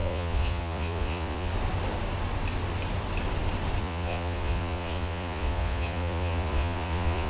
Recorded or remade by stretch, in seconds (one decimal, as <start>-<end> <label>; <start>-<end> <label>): 0.0-1.5 remade; 1.5-3.8 recorded; 3.8-7.3 remade